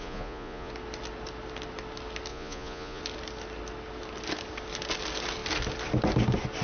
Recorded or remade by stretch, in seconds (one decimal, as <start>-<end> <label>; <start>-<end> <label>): 0.0-0.7 remade; 0.7-2.3 recorded; 2.3-3.0 remade; 3.0-6.6 recorded